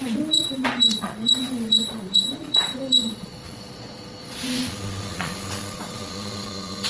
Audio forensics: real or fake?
fake